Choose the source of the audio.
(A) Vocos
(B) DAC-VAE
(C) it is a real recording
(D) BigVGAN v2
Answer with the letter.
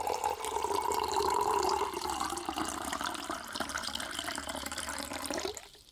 D